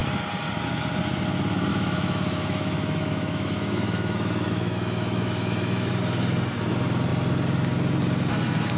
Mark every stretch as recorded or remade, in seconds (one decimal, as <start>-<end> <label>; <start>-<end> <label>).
0.0-1.7 recorded; 1.7-5.9 remade; 5.9-8.8 recorded